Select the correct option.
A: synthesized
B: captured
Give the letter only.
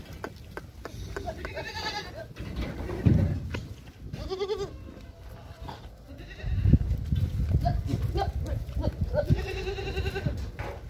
B